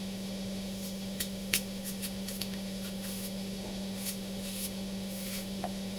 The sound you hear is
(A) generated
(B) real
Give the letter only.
A